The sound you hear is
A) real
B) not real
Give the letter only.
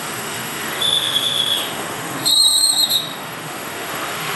B